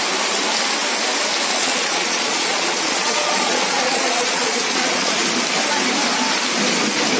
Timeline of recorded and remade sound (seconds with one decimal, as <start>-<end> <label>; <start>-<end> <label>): 0.0-1.5 recorded; 1.5-5.1 remade; 5.1-7.2 recorded